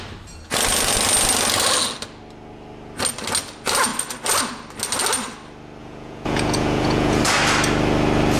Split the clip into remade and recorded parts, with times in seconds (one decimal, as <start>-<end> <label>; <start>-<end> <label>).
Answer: 0.0-5.8 recorded; 5.8-7.2 remade; 7.2-8.4 recorded